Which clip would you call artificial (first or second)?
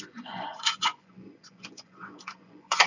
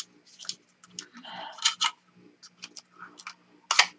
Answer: first